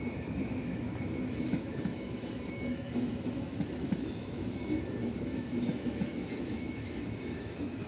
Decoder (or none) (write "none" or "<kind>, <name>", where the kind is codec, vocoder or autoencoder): autoencoder, DAC-VAE